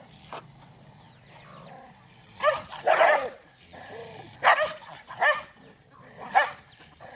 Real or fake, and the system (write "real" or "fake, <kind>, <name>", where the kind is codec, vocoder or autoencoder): real